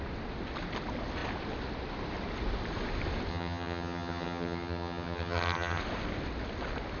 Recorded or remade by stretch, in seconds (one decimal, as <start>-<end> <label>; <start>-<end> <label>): 0.0-3.3 recorded; 3.3-5.8 remade; 5.8-7.0 recorded